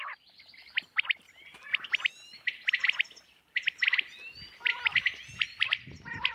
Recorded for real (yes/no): yes